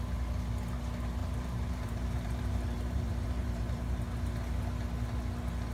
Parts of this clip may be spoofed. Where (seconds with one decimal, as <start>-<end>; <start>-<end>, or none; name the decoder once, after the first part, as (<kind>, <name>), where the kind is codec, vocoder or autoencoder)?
1.2-4.0 (vocoder, BigVGAN v2)